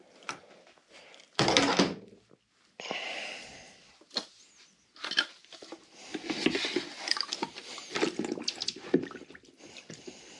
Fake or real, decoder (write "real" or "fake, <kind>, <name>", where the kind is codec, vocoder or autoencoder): real